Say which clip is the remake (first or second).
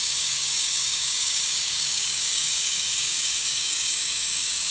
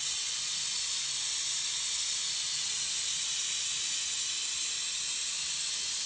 first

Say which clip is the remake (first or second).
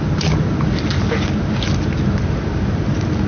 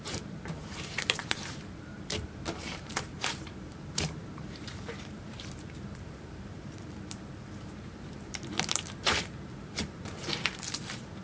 second